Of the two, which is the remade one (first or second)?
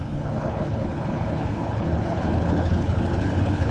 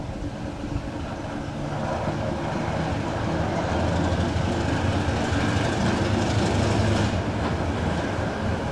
first